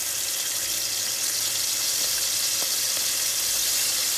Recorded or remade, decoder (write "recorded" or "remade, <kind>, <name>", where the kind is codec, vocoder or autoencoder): recorded